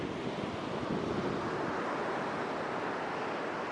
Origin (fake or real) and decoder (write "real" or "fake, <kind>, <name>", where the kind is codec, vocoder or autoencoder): real